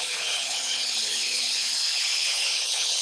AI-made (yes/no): yes